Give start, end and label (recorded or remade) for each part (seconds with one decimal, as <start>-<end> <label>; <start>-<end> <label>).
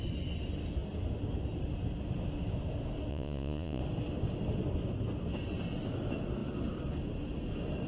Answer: 0.0-3.1 recorded; 3.1-3.8 remade; 3.8-7.9 recorded